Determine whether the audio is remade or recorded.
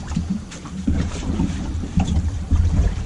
remade